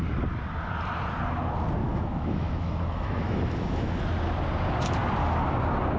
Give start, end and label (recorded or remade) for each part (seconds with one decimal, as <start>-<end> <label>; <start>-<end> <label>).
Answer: 0.0-1.8 recorded; 1.8-4.0 remade; 4.0-6.0 recorded